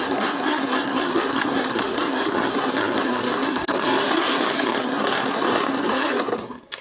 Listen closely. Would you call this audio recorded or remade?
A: remade